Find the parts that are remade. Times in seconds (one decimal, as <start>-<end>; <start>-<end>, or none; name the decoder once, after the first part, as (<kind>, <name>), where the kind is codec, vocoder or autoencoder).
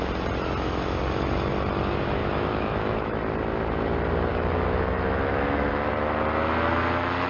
2.2-3.2 (autoencoder, DAC-VAE); 4.3-5.9